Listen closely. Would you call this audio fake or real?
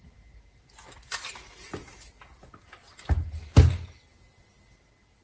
real